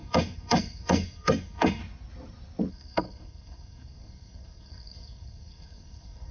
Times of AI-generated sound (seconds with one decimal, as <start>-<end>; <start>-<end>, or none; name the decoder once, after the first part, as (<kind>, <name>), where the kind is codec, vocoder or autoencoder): 0.0-1.8 (codec, SNAC); 2.7-6.3